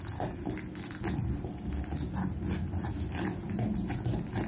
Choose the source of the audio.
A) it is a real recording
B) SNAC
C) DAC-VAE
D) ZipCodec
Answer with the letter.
A